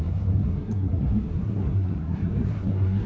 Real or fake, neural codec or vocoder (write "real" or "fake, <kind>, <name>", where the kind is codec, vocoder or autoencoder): fake, codec, SNAC